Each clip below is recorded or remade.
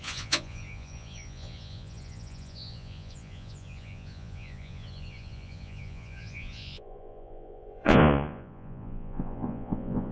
remade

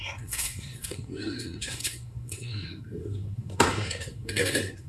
remade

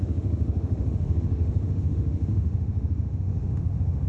remade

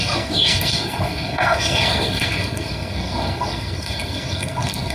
remade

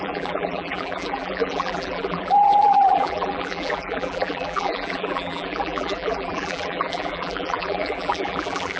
remade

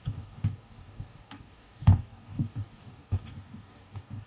remade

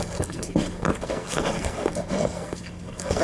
remade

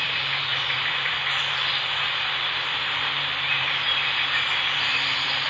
remade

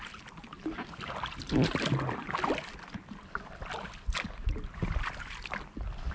recorded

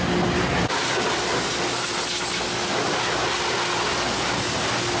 recorded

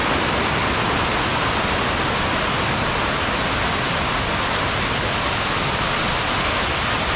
recorded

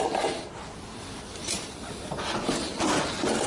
recorded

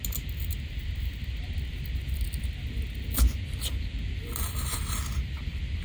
recorded